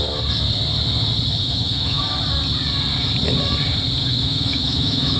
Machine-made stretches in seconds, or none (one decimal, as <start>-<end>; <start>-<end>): 1.4-2.0; 4.0-5.2